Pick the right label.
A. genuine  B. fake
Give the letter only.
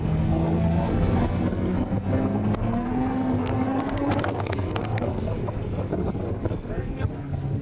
B